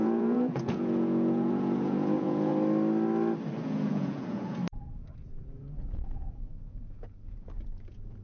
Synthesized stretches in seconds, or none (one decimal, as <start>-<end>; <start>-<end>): 0.0-2.5; 3.6-4.6; 5.5-8.2